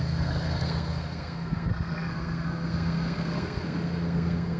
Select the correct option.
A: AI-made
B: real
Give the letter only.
A